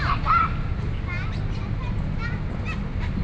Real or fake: real